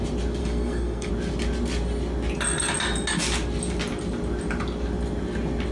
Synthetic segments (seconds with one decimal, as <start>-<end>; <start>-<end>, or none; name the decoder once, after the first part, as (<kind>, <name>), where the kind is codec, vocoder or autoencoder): 0.4-1.1 (codec, SNAC)

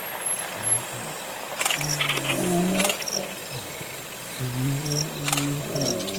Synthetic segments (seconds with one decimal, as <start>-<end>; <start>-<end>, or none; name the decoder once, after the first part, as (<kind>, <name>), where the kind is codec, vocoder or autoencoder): none